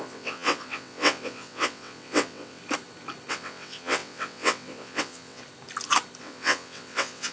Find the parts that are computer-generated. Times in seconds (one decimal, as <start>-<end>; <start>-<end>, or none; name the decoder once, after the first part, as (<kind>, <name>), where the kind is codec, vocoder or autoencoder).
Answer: 0.0-2.6 (vocoder, WaveNeXt); 3.3-5.4; 6.2-7.3